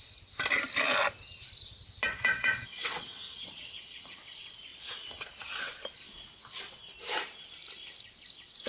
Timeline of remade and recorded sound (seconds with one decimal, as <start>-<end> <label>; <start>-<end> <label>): 0.0-2.1 recorded; 2.1-4.2 remade; 4.2-4.7 recorded; 4.7-5.7 remade; 5.7-8.7 recorded

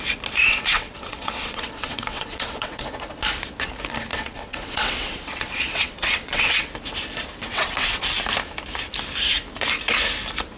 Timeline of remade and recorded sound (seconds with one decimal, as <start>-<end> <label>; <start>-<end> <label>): 0.0-0.4 recorded; 0.4-2.8 remade; 2.8-4.1 recorded; 4.1-6.7 remade; 6.7-7.5 recorded; 7.5-8.0 remade; 8.0-10.6 recorded

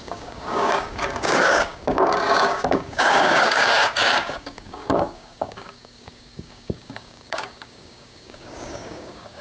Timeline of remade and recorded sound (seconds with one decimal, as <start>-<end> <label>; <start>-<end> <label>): 0.0-9.4 remade

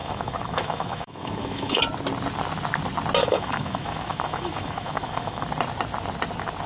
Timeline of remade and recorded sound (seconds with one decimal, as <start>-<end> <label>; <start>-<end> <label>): 0.0-1.8 remade; 1.8-3.2 recorded; 3.2-5.4 remade; 5.4-6.7 recorded

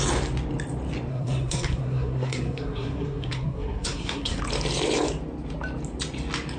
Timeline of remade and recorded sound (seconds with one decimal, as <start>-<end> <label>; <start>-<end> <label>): 0.0-1.1 recorded; 1.1-4.4 remade; 4.4-6.6 recorded

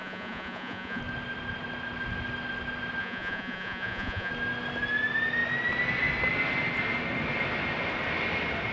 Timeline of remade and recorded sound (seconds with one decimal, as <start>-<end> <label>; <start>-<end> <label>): 0.0-1.0 remade; 1.0-3.0 recorded; 3.0-4.3 remade; 4.3-8.7 recorded

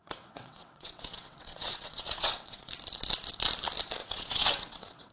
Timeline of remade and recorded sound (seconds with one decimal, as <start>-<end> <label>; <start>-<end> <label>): 0.0-2.7 remade; 2.7-4.0 recorded; 4.0-5.1 remade